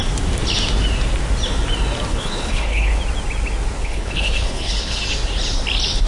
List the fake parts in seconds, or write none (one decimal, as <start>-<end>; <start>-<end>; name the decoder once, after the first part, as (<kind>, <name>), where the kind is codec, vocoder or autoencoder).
2.1-3.0 (codec, HILCodec); 3.8-5.0